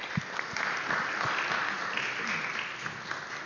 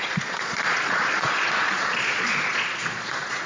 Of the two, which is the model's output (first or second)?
second